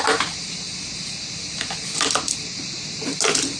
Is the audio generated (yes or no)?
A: no